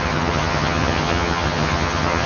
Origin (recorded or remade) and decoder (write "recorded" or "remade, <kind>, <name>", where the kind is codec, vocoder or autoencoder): remade, vocoder, HiFi-GAN